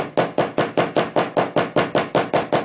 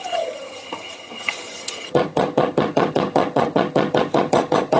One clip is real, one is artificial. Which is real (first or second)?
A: first